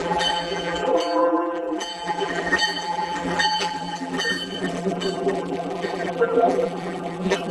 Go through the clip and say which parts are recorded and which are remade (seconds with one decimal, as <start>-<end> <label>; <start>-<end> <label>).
0.0-7.5 remade

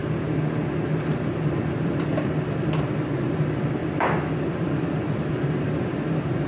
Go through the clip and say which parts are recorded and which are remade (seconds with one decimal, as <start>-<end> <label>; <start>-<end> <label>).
0.0-1.7 recorded; 1.7-6.5 remade

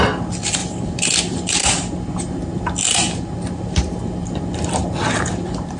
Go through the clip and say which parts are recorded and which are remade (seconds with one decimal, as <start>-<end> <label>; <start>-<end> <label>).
0.0-0.6 recorded; 0.6-1.2 remade; 1.2-5.8 recorded

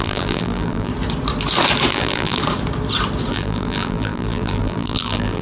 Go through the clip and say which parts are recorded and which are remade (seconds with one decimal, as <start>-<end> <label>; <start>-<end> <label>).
0.0-0.9 remade; 0.9-1.9 recorded; 1.9-2.4 remade; 2.4-3.3 recorded; 3.3-5.4 remade

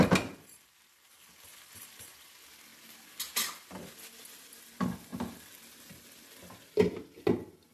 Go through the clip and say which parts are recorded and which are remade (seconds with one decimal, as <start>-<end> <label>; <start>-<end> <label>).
0.0-1.1 recorded; 1.1-2.3 remade; 2.3-7.7 recorded

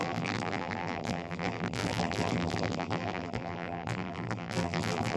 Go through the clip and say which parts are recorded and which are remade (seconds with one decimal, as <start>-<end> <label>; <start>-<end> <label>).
0.0-5.2 remade

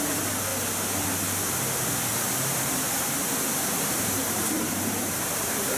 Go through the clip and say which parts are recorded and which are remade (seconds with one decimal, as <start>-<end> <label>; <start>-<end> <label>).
0.0-2.1 recorded; 2.1-5.8 remade

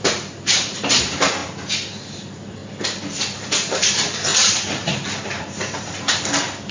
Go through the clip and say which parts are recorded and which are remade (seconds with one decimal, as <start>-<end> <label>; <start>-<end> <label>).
0.0-1.4 remade; 1.4-2.2 recorded; 2.2-2.6 remade; 2.6-3.4 recorded; 3.4-6.7 remade